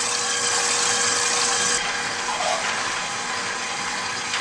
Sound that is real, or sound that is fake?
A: real